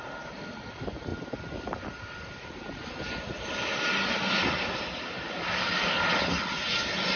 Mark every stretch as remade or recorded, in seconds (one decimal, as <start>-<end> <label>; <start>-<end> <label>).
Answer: 0.0-7.2 recorded